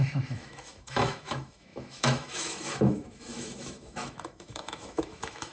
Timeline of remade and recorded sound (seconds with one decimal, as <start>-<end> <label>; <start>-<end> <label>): 0.0-5.5 remade